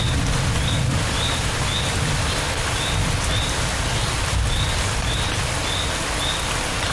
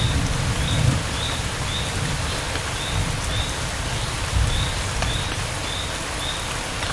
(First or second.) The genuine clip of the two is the first